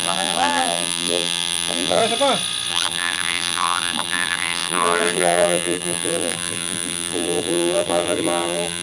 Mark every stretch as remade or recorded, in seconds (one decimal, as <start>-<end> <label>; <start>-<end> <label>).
0.0-2.0 remade; 2.0-2.7 recorded; 2.7-8.8 remade

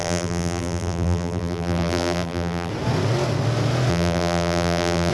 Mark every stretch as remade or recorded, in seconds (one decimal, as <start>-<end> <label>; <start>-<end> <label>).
0.0-2.7 remade; 2.7-3.9 recorded; 3.9-5.1 remade

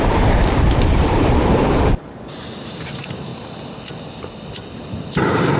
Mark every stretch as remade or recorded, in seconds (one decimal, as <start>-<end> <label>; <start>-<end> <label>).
0.0-3.3 remade; 3.3-5.0 recorded; 5.0-5.6 remade

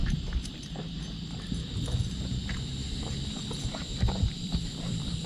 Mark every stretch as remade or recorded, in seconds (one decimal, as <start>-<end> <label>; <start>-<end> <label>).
0.0-2.1 remade; 2.1-3.9 recorded; 3.9-5.3 remade

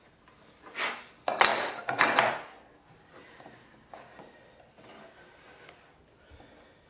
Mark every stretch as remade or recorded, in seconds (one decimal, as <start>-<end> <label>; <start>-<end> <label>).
0.0-6.9 recorded

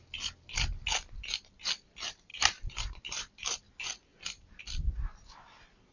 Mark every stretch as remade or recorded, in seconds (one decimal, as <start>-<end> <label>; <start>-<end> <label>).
0.0-2.3 recorded; 2.3-3.3 remade; 3.3-5.9 recorded

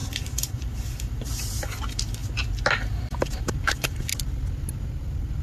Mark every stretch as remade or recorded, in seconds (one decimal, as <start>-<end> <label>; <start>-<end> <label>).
0.0-2.2 remade; 2.2-2.8 recorded; 2.8-4.1 remade; 4.1-5.4 recorded